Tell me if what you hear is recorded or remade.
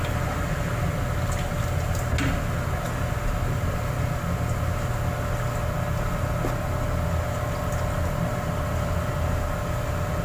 recorded